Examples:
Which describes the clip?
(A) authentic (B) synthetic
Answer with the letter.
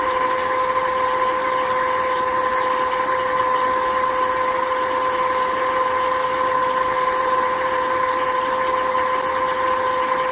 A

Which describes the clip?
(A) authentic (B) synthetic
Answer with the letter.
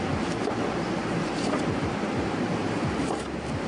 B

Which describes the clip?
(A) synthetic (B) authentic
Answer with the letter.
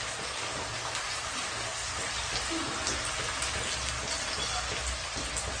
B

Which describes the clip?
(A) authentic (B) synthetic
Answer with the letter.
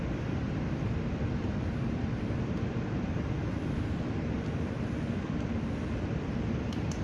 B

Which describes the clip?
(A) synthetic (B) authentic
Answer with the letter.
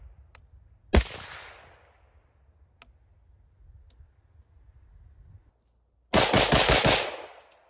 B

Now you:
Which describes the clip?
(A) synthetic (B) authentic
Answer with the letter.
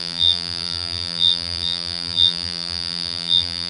A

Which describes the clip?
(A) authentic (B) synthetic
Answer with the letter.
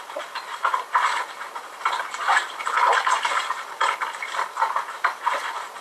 B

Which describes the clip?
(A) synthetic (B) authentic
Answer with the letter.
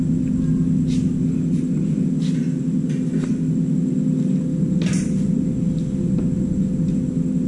B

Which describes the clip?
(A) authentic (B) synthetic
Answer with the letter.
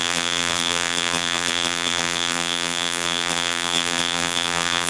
B